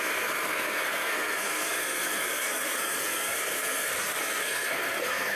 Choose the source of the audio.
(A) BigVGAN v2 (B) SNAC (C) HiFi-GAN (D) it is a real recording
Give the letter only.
B